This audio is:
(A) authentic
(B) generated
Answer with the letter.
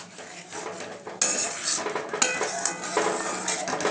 A